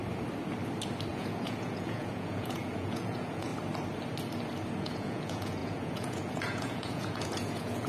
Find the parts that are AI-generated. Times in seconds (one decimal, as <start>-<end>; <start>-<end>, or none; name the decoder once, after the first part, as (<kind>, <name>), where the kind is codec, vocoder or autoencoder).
1.1-3.5 (vocoder, Vocos); 4.8-7.9